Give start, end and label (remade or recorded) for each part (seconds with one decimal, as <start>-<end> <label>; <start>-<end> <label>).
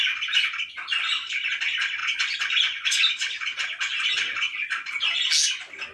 0.0-2.0 recorded; 2.0-4.7 remade; 4.7-5.9 recorded